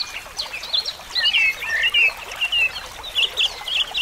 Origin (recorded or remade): recorded